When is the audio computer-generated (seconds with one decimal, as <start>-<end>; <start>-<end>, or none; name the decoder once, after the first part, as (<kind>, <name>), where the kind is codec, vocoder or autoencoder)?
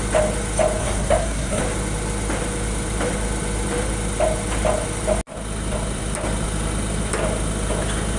0.8-1.6 (codec, SNAC)